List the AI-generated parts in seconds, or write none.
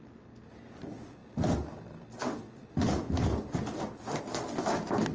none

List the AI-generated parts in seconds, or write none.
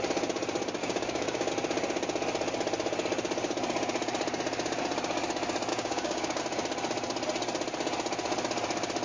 0.8-1.5 (codec, DAC); 5.7-6.4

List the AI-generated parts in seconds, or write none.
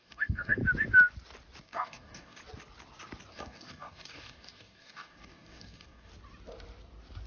0.0-0.6 (codec, DAC); 1.6-2.4; 3.3-6.1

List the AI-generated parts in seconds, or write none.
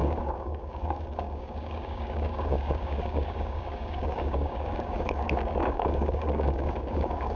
0.0-7.4 (codec, DAC)